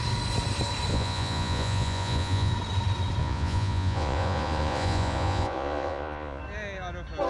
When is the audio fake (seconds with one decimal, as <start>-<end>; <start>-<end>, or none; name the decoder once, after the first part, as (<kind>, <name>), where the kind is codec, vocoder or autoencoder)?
0.9-2.5 (vocoder, Vocos); 3.2-6.4